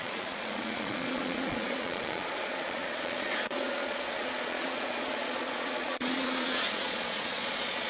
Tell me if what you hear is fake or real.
fake